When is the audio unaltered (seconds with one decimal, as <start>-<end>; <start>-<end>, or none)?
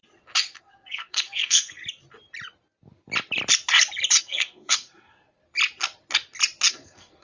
0.0-0.6; 1.8-4.2; 5.4-6.7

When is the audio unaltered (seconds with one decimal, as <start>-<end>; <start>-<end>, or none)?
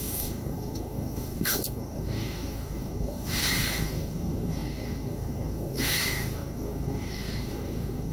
none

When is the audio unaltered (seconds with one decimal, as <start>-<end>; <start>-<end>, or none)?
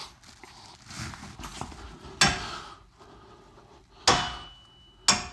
0.0-5.3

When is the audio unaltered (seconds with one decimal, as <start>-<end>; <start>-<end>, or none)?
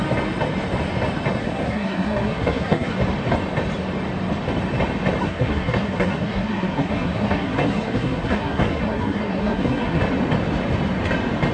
0.0-1.4; 2.9-5.2; 10.0-11.5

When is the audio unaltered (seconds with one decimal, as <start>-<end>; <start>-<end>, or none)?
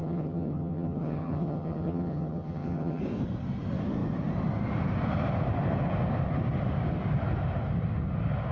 3.0-8.5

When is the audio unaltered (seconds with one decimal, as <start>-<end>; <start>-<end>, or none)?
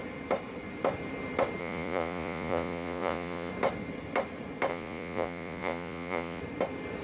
0.0-1.6; 3.5-4.7; 6.4-7.0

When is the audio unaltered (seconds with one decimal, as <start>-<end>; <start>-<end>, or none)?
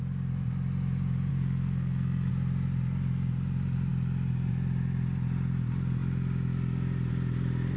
0.0-1.3; 2.3-7.8